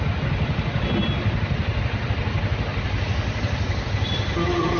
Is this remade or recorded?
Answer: recorded